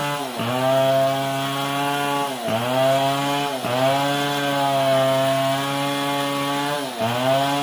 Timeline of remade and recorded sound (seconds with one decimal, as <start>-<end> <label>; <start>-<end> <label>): 0.0-7.6 recorded